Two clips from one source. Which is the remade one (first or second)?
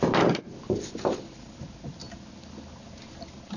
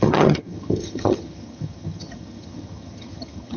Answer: second